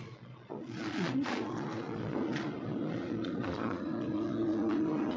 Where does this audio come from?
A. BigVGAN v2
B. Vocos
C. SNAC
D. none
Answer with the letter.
B